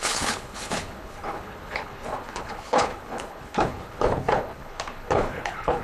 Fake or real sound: fake